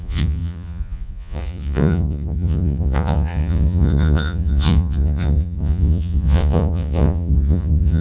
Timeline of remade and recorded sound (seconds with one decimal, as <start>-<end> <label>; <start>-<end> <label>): 0.0-8.0 remade